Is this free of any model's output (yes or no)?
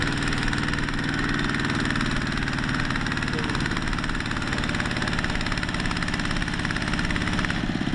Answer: yes